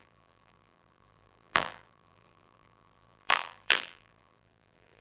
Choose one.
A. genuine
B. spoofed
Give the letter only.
B